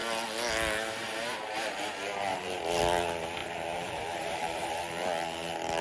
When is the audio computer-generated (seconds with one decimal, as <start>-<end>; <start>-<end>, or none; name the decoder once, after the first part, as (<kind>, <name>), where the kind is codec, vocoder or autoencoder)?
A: 2.3-2.8 (vocoder, BigVGAN v2); 3.4-4.7